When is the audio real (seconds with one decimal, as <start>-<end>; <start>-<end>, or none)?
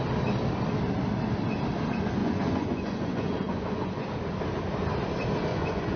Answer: 0.0-2.2; 4.1-5.5